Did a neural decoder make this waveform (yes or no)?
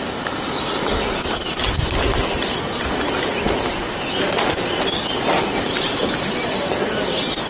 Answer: no